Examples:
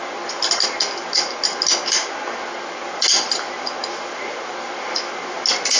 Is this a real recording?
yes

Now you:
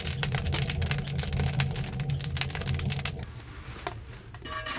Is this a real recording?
yes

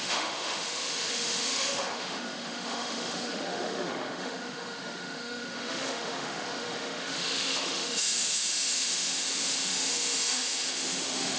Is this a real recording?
no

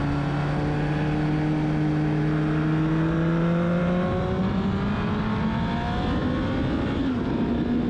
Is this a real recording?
yes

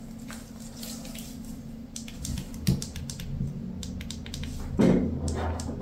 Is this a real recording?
yes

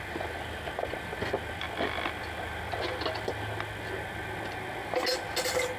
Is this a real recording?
yes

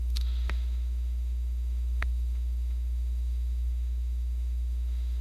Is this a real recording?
no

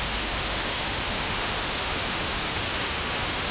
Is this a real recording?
no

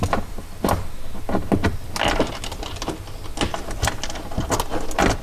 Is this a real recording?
yes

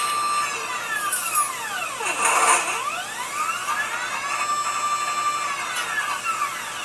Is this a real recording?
yes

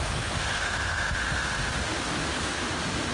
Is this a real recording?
no